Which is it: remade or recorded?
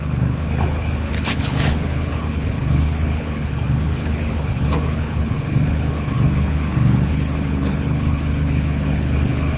remade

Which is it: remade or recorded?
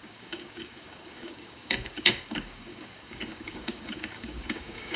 remade